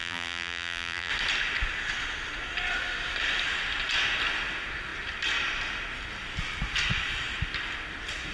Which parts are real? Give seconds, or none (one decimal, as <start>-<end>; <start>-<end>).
1.1-8.3